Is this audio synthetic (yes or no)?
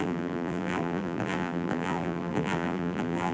yes